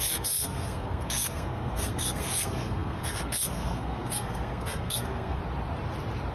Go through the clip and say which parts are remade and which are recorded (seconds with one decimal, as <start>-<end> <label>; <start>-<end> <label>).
0.0-5.4 remade; 5.4-6.3 recorded